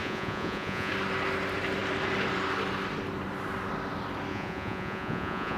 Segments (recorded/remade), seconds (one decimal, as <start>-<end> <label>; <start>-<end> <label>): 0.0-0.9 remade; 0.9-4.3 recorded; 4.3-5.6 remade